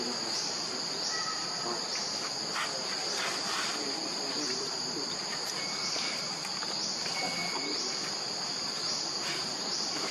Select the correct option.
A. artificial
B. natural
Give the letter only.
B